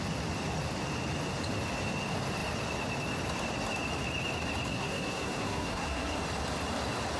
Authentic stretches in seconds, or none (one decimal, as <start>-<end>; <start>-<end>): 0.0-4.7; 6.2-7.2